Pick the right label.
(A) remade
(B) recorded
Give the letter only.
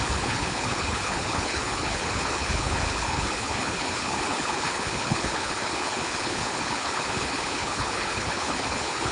A